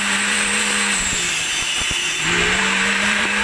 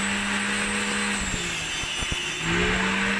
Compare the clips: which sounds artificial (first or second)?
first